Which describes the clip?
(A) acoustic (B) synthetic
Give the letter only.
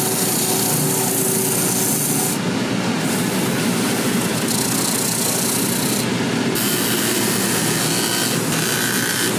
A